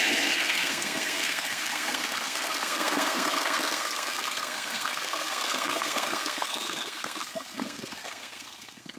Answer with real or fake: fake